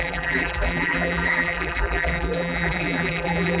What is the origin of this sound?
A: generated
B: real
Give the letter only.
A